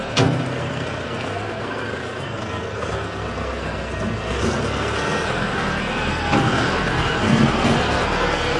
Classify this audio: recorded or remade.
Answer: remade